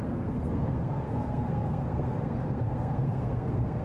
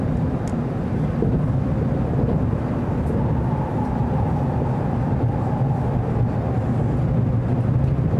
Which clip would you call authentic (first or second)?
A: second